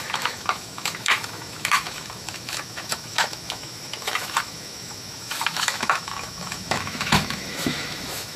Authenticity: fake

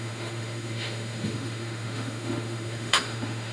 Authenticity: fake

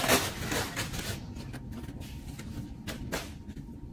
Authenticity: real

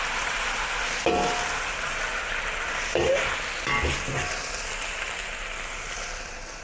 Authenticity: real